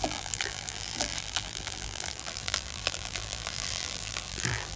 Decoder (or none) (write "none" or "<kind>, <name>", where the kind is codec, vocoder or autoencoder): vocoder, BigVGAN v2